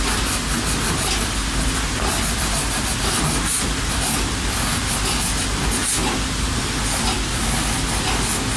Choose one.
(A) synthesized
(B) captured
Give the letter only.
B